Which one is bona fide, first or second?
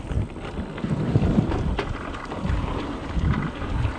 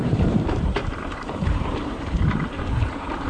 first